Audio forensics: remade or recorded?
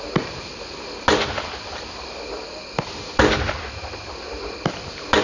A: recorded